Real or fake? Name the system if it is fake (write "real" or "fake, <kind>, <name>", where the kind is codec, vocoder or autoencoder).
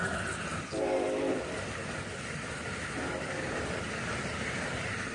fake, vocoder, BigVGAN v2